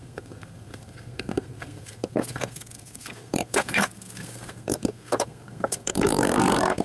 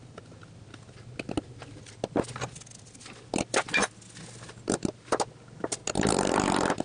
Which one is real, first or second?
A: second